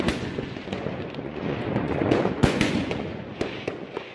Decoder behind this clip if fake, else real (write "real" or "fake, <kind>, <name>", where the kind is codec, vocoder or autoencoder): fake, vocoder, Vocos